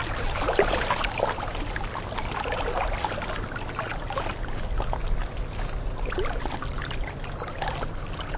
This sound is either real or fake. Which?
real